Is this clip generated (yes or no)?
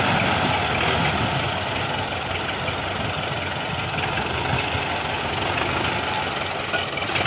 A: no